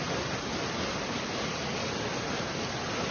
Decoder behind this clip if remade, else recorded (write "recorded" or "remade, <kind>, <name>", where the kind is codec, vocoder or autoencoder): recorded